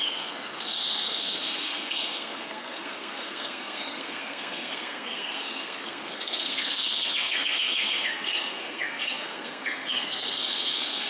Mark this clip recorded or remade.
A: remade